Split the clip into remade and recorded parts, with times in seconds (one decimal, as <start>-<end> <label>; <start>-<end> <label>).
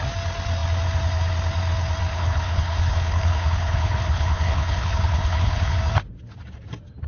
0.0-2.1 recorded; 2.1-5.8 remade; 5.8-7.1 recorded